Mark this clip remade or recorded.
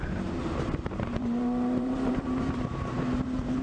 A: remade